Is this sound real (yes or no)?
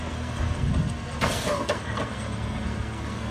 no